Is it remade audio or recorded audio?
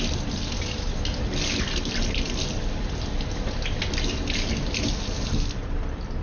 recorded